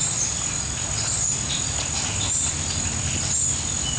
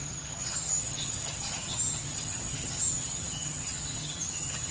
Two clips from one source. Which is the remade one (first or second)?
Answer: second